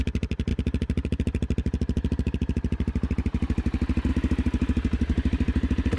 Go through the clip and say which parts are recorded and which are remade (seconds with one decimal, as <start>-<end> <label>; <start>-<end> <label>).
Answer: 0.0-6.0 recorded